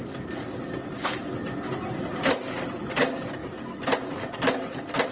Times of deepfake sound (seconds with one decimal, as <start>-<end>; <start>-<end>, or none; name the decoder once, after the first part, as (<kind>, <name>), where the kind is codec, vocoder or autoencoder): none